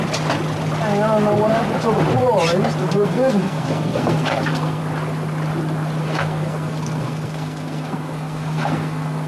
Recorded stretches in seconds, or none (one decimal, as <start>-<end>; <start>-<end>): 0.0-2.8; 4.8-6.0